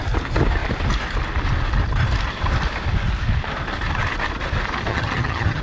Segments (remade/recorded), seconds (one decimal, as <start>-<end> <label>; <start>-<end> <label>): 0.0-4.9 recorded; 4.9-5.6 remade